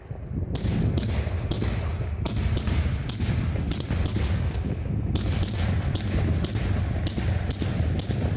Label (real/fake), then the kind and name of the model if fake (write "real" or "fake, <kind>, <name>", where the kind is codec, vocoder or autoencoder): real